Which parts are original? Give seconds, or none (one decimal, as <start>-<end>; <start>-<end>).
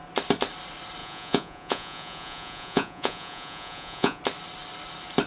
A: 0.0-1.0; 4.2-5.3